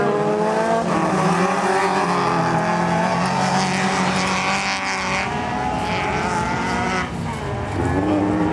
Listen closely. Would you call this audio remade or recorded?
recorded